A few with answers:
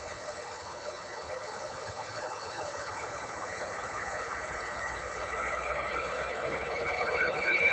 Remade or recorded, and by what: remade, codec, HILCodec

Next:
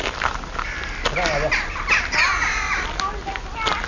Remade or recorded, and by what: recorded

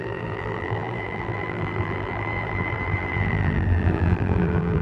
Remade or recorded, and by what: remade, vocoder, BigVGAN v2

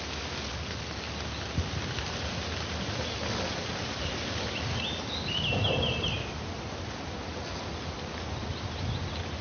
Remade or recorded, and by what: recorded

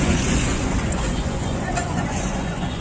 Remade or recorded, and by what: remade, vocoder, Vocos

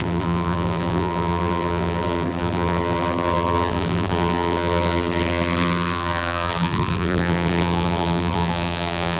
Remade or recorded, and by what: remade, vocoder, BigVGAN v2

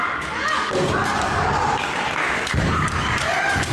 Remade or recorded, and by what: remade, codec, DAC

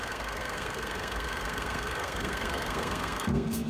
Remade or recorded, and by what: remade, codec, SNAC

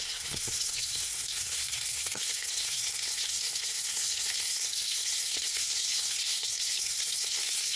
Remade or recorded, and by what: remade, codec, SNAC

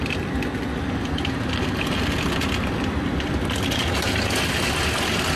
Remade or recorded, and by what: recorded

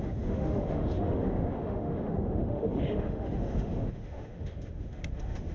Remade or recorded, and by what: remade, autoencoder, DAC-VAE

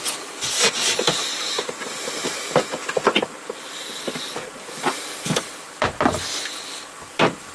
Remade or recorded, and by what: recorded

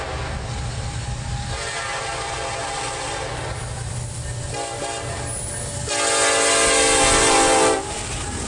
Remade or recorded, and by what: recorded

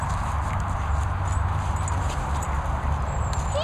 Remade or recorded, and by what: recorded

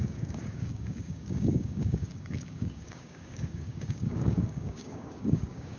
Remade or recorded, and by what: remade, codec, DAC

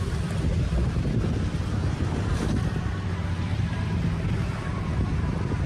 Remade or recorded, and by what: remade, vocoder, BigVGAN v2